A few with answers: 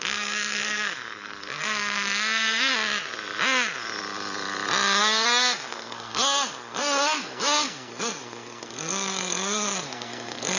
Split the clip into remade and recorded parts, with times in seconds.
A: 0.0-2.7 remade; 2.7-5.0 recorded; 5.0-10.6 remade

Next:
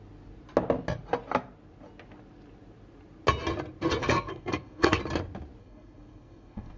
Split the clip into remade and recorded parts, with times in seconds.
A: 0.0-4.0 recorded; 4.0-5.0 remade; 5.0-5.6 recorded; 5.6-6.8 remade

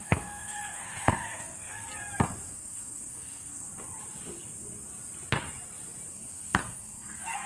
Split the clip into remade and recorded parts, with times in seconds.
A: 0.0-1.9 remade; 1.9-2.5 recorded; 2.5-3.7 remade; 3.7-6.1 recorded; 6.1-7.5 remade

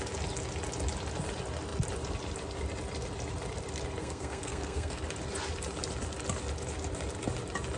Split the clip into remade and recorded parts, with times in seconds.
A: 0.0-4.0 recorded; 4.0-5.0 remade; 5.0-7.8 recorded

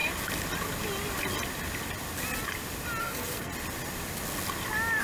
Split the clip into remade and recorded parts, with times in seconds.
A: 0.0-3.0 recorded; 3.0-3.5 remade; 3.5-5.0 recorded